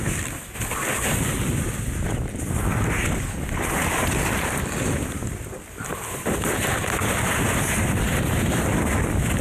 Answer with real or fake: real